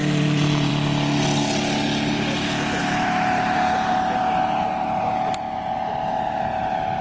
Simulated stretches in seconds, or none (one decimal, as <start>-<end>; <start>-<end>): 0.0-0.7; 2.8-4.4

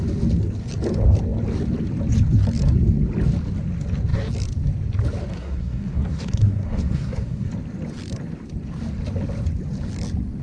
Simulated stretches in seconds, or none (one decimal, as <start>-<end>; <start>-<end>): 5.3-7.5

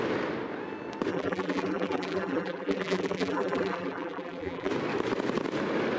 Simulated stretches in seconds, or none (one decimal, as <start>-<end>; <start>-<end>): 1.1-4.7

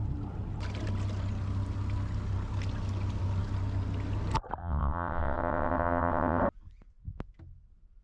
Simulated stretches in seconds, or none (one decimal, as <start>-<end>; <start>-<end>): 4.6-6.4

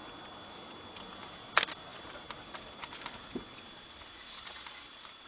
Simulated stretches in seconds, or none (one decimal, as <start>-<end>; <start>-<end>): 1.9-5.3

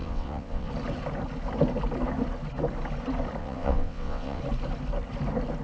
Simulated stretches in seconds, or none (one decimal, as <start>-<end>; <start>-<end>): 0.0-0.7; 3.4-4.4

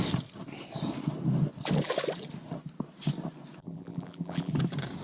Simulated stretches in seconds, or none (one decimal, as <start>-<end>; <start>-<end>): 3.6-4.5